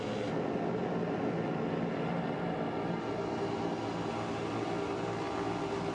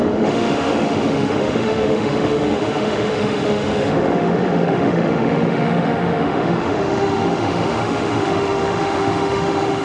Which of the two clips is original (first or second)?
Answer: first